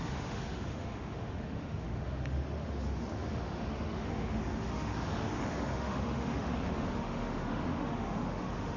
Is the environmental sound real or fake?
fake